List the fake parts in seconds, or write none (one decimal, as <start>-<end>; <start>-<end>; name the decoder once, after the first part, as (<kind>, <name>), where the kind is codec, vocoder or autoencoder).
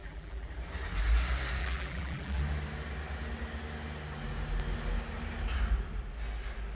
0.0-0.5 (vocoder, BigVGAN v2); 1.6-2.4